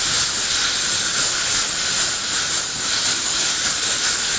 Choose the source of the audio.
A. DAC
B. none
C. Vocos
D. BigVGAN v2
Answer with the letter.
B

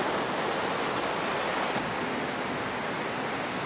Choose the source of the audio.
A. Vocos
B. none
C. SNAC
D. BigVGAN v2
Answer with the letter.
B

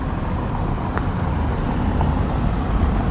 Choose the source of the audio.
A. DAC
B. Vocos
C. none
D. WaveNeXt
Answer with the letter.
C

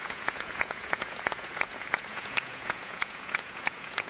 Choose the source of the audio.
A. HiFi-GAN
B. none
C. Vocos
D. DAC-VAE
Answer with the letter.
C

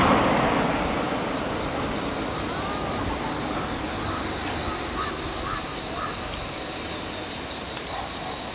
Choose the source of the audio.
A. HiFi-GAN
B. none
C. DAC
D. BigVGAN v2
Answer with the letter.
B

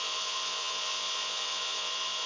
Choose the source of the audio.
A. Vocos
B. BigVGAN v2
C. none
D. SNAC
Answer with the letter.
A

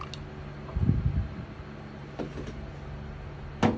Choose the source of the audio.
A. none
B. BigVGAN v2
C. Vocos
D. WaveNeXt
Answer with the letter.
A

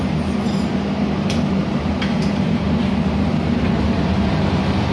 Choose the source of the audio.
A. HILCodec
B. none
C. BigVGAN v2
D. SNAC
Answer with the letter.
C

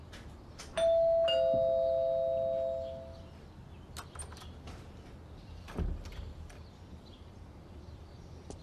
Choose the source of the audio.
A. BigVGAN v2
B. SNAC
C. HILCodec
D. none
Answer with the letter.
D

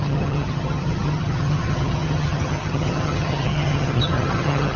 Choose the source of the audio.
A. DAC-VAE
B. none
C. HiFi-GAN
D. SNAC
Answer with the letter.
C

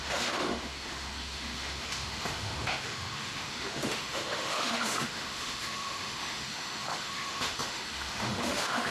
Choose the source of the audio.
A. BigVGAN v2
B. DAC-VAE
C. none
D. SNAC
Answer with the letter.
B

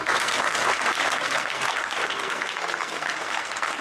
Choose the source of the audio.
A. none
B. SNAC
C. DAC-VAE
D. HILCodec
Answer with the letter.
B